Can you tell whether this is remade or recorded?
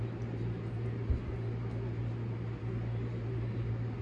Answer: recorded